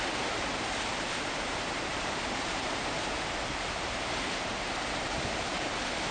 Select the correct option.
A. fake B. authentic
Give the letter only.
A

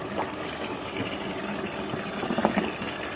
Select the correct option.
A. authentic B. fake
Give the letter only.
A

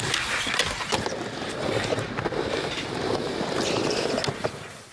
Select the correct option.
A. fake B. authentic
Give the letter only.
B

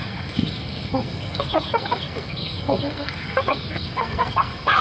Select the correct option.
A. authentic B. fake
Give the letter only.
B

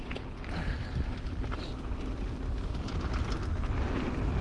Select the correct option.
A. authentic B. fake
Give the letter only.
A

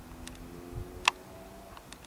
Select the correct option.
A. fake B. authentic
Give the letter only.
B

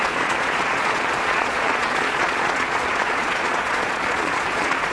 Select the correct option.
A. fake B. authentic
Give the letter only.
A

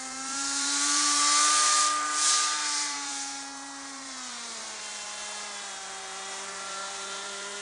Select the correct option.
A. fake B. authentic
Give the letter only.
A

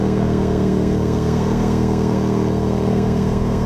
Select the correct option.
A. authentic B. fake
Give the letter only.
B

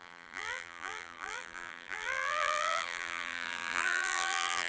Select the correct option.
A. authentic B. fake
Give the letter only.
B